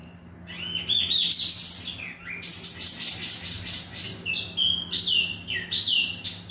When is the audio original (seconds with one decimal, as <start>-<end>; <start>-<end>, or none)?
0.0-6.5